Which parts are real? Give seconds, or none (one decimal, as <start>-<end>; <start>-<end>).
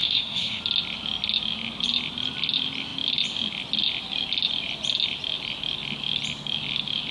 0.6-7.1